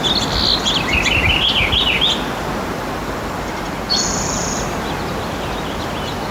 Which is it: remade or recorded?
recorded